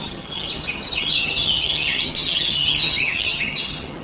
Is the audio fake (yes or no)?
yes